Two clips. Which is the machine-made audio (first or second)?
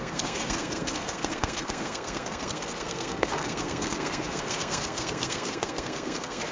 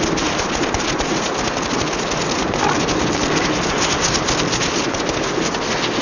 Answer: first